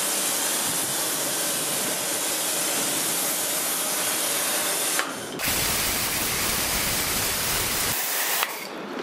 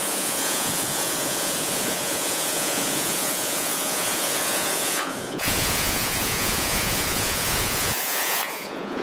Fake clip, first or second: second